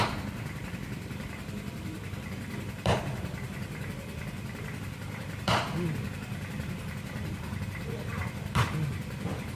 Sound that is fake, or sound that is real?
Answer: fake